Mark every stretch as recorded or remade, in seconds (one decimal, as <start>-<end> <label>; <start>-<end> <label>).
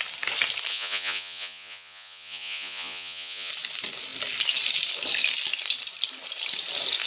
0.0-0.7 recorded; 0.7-3.5 remade; 3.5-7.1 recorded